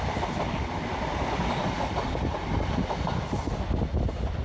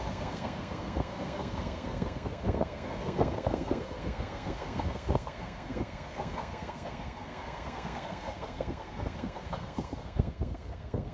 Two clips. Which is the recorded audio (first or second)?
first